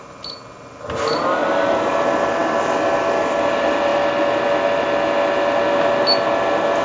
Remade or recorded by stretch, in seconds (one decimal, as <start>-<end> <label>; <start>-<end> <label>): 0.0-1.4 recorded; 1.4-1.9 remade; 1.9-6.8 recorded